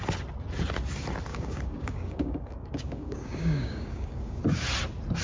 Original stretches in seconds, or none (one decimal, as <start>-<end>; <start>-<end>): 0.0-1.3; 4.4-5.2